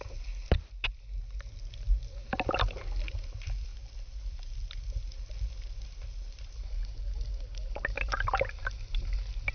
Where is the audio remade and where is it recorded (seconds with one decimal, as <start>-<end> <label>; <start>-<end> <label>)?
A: 0.0-9.5 recorded